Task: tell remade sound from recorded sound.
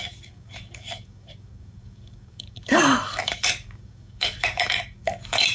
remade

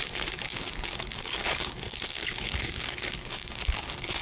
remade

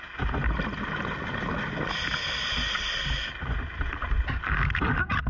recorded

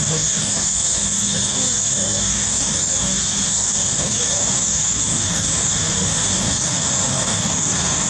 remade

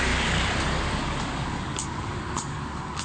remade